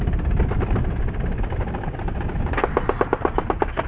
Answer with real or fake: real